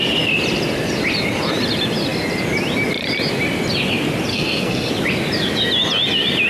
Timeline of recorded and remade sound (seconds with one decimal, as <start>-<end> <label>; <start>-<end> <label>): 0.0-4.3 recorded; 4.3-4.9 remade; 4.9-6.5 recorded